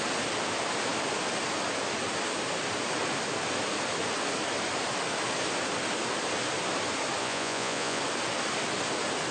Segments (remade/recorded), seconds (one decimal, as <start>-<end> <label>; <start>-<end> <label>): 0.0-7.2 recorded; 7.2-8.0 remade; 8.0-9.3 recorded